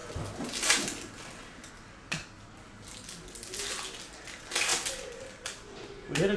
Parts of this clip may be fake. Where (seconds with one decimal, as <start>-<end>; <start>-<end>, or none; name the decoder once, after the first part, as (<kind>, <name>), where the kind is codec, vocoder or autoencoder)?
none